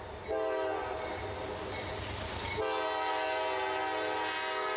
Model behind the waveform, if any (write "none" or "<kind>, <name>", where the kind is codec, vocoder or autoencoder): none